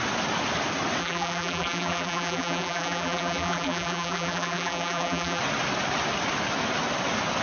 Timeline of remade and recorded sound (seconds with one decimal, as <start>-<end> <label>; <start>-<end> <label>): 0.0-1.0 recorded; 1.0-5.4 remade; 5.4-7.4 recorded